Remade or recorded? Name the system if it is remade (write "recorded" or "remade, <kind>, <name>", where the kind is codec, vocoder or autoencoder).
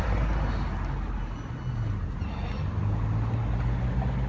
recorded